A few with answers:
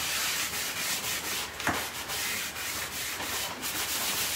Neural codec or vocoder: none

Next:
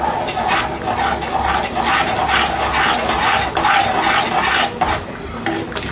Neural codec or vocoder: none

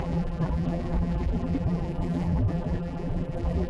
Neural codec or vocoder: vocoder, BigVGAN v2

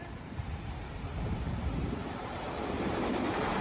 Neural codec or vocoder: vocoder, BigVGAN v2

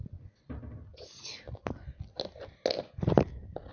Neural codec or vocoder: none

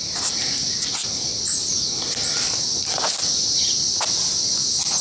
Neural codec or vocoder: none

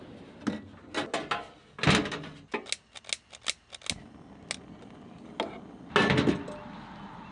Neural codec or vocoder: none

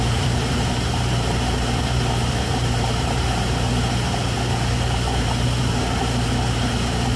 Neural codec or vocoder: vocoder, BigVGAN v2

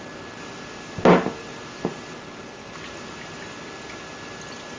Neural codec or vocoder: none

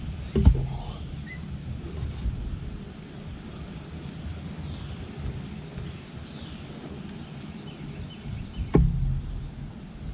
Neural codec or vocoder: none